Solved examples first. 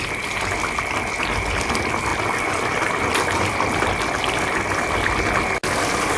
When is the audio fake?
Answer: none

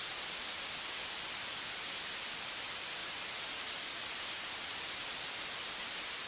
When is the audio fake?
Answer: none